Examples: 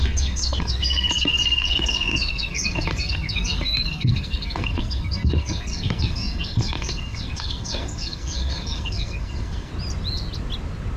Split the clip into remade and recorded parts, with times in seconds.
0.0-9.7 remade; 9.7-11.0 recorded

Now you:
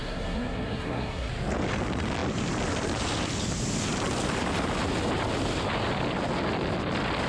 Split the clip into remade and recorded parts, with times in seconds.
0.0-1.3 remade; 1.3-7.3 recorded

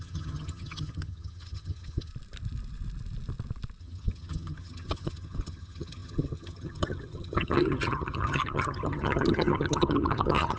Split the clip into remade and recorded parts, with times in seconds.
0.0-2.1 remade; 2.1-3.8 recorded; 3.8-10.6 remade

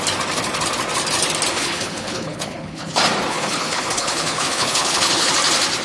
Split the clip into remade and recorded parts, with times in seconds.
0.0-1.5 recorded; 1.5-2.9 remade; 2.9-3.3 recorded; 3.3-5.3 remade; 5.3-5.8 recorded